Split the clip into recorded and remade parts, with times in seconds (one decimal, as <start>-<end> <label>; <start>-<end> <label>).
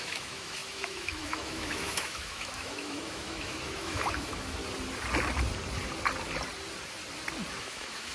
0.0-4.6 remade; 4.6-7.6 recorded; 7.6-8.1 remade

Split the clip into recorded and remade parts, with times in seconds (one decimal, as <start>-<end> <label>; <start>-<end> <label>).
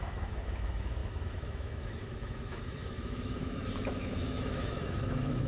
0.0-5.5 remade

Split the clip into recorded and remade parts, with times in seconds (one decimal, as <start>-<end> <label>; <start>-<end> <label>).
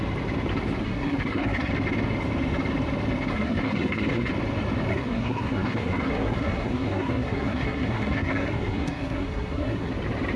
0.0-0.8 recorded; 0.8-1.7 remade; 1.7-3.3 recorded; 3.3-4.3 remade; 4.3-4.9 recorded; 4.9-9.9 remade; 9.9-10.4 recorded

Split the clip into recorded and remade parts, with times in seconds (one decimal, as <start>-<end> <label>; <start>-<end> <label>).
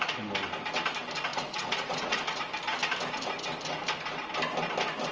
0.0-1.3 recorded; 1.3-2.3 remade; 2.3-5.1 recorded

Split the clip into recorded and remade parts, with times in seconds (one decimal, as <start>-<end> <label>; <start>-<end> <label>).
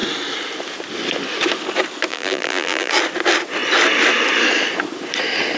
0.0-2.1 recorded; 2.1-2.9 remade; 2.9-5.6 recorded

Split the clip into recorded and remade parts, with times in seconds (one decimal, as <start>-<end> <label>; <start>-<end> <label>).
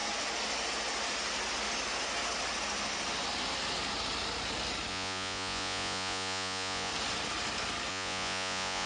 0.0-4.9 recorded; 4.9-6.9 remade; 6.9-7.9 recorded; 7.9-8.9 remade